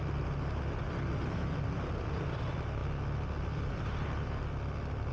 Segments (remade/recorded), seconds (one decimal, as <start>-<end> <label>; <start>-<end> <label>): 0.0-5.1 recorded